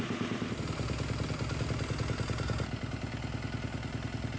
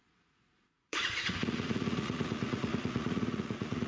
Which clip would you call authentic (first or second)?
first